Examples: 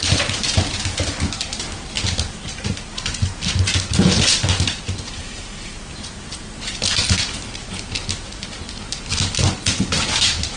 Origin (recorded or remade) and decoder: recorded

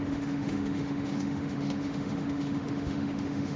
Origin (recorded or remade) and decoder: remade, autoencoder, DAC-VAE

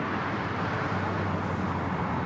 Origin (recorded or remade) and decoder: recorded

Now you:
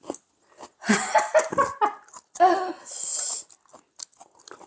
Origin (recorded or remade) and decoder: recorded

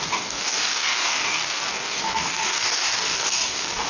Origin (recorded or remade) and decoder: remade, codec, DAC